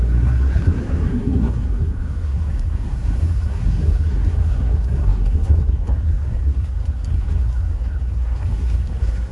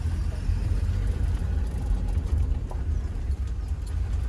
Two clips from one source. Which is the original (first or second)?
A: second